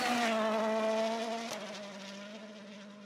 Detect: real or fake real